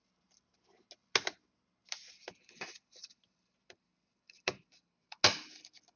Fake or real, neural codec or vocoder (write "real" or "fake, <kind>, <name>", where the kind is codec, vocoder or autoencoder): real